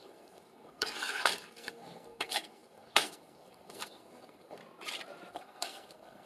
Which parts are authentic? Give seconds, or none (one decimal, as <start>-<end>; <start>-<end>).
4.6-5.3